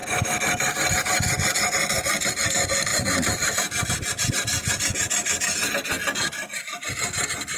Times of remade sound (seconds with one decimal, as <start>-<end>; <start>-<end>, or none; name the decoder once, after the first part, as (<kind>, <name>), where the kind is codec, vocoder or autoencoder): 0.9-7.6 (vocoder, BigVGAN v2)